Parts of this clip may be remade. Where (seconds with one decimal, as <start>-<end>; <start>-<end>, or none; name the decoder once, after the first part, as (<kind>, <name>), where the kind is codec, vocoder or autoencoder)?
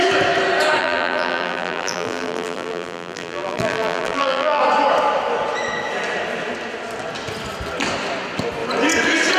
0.8-4.6 (vocoder, BigVGAN v2)